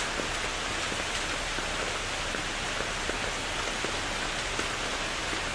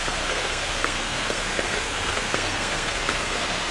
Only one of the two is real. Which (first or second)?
first